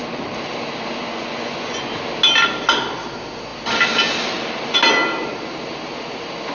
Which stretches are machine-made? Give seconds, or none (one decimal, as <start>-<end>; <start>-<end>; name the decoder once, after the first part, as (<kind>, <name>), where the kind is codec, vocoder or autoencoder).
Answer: 1.1-1.9 (vocoder, Vocos)